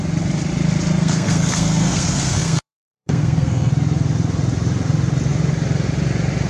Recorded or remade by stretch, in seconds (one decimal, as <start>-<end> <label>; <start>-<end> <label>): 0.0-1.0 recorded; 1.0-3.7 remade; 3.7-6.5 recorded